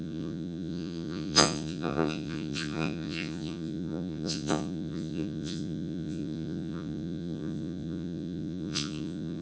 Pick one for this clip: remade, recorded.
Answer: remade